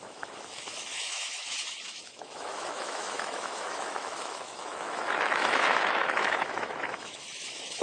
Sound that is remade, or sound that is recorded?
remade